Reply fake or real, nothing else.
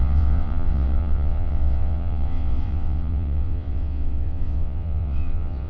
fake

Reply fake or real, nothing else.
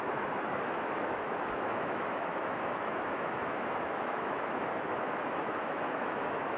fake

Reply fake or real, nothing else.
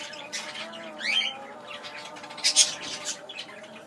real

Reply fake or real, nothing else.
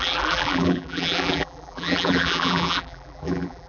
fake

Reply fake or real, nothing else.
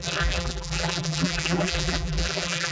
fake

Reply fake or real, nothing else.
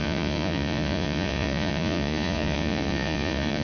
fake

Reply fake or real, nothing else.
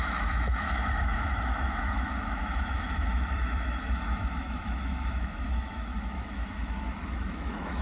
fake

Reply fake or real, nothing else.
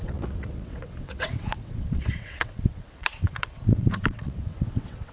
fake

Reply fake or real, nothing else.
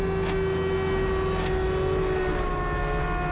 real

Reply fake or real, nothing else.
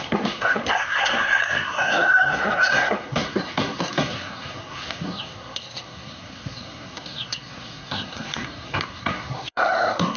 fake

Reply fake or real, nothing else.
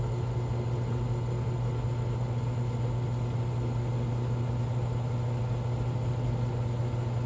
real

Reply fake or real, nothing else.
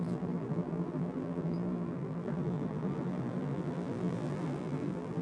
fake